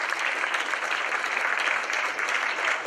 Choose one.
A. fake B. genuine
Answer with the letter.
B